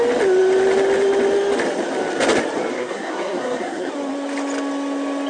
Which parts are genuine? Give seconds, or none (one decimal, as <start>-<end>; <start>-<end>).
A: 0.0-2.7; 3.9-5.3